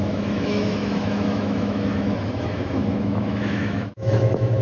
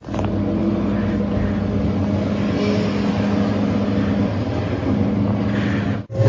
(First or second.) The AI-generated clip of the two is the first